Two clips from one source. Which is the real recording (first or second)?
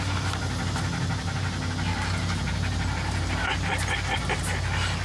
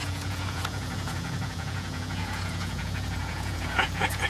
first